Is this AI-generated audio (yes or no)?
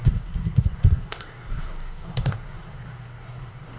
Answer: yes